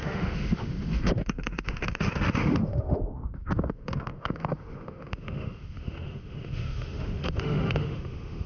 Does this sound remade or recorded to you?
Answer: remade